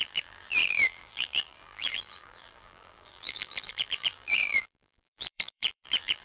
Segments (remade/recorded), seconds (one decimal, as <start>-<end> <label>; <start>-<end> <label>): 0.0-6.2 remade